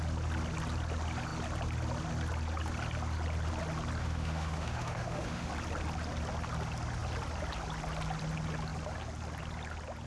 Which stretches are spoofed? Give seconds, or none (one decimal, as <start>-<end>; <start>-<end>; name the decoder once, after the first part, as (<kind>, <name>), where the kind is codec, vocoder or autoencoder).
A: 4.0-5.5 (autoencoder, DAC-VAE)